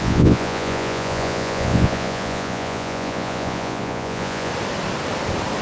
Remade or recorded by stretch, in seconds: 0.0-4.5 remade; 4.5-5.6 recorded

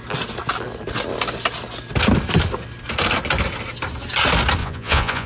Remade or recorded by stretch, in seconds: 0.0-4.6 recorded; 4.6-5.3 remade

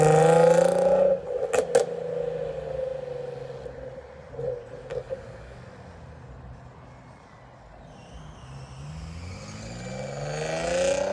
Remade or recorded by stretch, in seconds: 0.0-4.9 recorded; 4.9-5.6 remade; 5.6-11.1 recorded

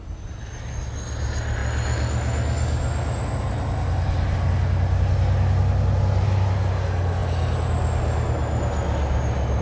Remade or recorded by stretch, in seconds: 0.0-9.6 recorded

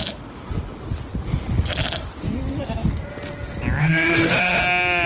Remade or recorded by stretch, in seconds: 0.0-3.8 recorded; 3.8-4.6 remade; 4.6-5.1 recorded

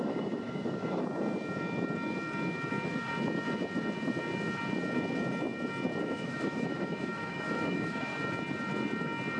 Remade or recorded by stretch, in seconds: 0.0-1.0 remade; 1.0-6.0 recorded; 6.0-8.1 remade; 8.1-9.4 recorded